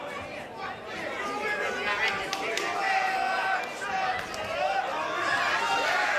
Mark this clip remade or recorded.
recorded